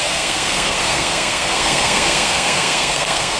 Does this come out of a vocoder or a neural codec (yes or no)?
yes